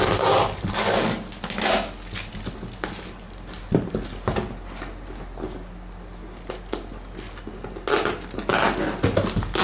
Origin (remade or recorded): recorded